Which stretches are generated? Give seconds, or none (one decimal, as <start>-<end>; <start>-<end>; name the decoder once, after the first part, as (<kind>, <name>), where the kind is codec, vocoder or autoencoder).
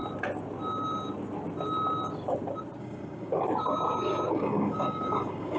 2.8-3.3 (codec, DAC); 4.3-5.6